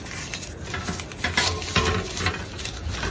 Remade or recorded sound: recorded